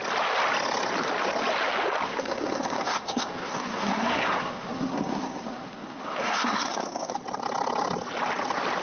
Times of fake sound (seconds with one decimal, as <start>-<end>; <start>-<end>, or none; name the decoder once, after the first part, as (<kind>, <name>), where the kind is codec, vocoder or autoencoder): 2.1-7.1 (codec, SNAC)